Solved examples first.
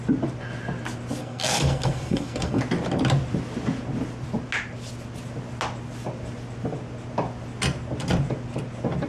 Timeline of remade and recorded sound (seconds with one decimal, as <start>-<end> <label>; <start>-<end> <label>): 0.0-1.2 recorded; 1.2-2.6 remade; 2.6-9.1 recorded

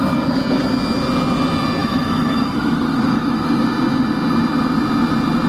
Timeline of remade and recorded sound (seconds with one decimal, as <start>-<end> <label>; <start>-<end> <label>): 0.0-1.8 recorded; 1.8-3.6 remade; 3.6-5.5 recorded

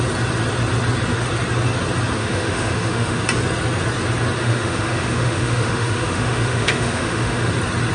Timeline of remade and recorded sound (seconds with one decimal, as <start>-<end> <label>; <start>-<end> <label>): 0.0-2.2 recorded; 2.2-3.2 remade; 3.2-4.4 recorded; 4.4-7.5 remade; 7.5-7.9 recorded

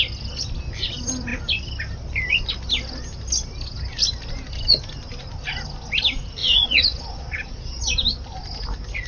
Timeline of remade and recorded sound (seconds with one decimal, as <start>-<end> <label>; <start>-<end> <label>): 0.0-6.4 recorded; 6.4-7.8 remade; 7.8-9.1 recorded

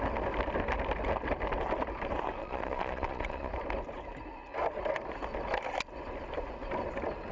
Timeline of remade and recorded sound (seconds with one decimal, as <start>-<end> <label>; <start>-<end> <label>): 0.0-2.4 recorded; 2.4-3.5 remade; 3.5-7.3 recorded

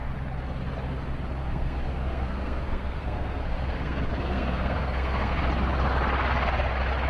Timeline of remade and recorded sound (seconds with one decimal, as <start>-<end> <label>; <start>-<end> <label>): 0.0-1.4 recorded; 1.4-5.5 remade; 5.5-7.1 recorded